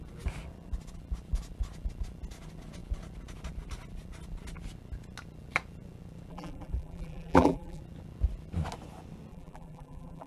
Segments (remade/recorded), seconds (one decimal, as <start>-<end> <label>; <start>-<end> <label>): 0.0-6.3 recorded; 6.3-7.8 remade; 7.8-9.3 recorded; 9.3-10.3 remade